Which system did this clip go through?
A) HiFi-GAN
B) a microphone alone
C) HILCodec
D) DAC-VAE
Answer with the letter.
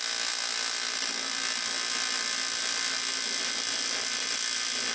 B